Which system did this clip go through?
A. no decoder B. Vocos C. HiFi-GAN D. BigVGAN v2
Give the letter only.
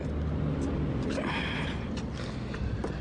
A